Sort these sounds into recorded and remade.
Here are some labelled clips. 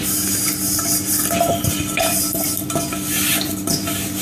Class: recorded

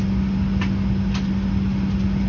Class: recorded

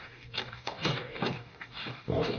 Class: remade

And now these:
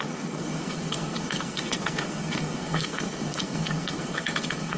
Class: remade